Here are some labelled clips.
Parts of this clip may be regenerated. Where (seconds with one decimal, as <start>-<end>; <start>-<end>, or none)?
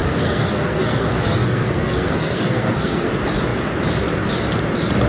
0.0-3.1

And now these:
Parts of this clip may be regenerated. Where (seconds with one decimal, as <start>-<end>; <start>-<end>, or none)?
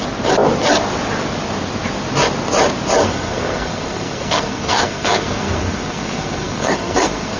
3.0-7.4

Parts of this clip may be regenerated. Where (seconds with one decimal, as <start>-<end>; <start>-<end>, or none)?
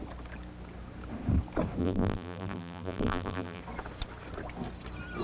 1.8-3.6